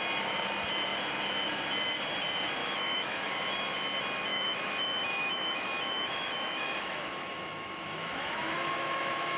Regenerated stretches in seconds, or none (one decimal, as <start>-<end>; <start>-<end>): 2.6-3.3; 4.3-9.4